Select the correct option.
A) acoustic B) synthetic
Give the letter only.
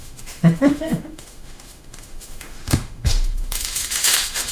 B